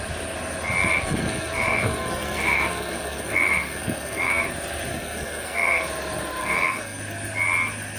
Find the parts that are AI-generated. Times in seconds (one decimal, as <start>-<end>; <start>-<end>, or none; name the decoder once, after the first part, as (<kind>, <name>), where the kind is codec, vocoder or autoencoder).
0.8-4.4 (codec, SNAC); 4.9-5.8; 6.4-7.0